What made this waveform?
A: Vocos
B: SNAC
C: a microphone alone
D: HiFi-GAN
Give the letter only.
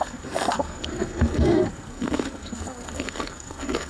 B